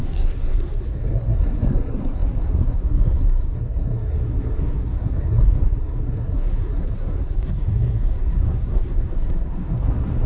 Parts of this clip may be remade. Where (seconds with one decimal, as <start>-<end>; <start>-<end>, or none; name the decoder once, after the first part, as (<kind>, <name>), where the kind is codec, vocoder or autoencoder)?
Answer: 0.0-10.3 (codec, SNAC)